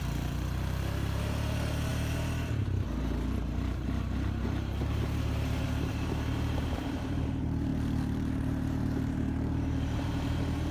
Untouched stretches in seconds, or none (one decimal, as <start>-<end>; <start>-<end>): 7.7-8.3